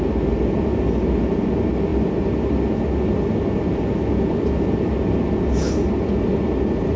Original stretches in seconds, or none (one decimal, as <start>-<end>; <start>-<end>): 0.0-7.0